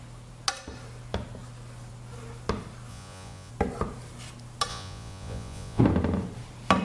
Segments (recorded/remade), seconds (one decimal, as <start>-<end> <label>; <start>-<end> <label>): 0.0-2.9 recorded; 2.9-3.5 remade; 3.5-4.7 recorded; 4.7-5.8 remade; 5.8-6.8 recorded